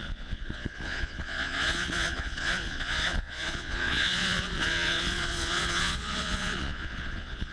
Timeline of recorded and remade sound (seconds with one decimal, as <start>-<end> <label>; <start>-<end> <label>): 0.0-7.5 remade